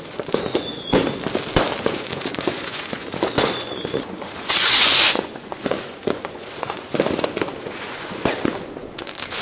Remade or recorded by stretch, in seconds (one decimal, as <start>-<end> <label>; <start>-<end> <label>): 0.0-1.0 remade; 1.0-1.8 recorded; 1.8-9.4 remade